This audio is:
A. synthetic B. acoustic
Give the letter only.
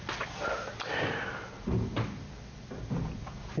B